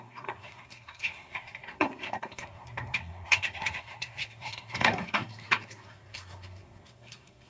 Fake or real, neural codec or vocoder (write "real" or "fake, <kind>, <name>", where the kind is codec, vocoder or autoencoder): fake, codec, SNAC